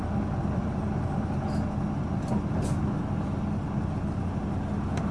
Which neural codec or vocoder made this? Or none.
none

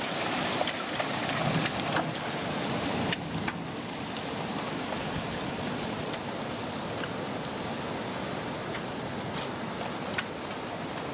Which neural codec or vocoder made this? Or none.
none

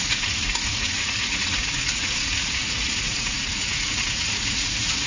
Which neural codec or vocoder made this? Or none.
vocoder, Vocos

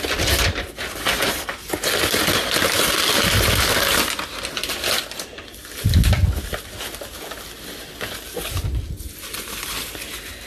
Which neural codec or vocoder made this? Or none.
none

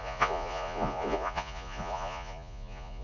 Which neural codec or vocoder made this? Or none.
vocoder, Vocos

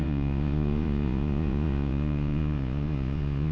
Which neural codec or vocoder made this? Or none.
vocoder, Vocos